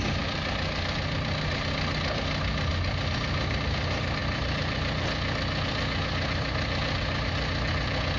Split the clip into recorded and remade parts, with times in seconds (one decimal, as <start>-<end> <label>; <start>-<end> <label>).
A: 0.0-8.2 recorded